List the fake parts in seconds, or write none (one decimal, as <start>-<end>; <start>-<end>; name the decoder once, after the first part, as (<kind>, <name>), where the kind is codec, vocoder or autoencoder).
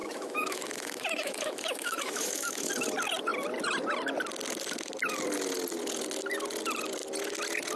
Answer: 0.0-2.7 (autoencoder, DAC-VAE)